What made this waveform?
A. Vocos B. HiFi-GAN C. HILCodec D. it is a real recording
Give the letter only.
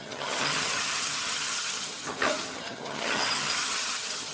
B